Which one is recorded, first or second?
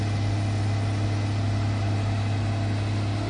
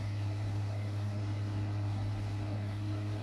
first